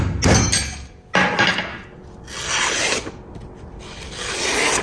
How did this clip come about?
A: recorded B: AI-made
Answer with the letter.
A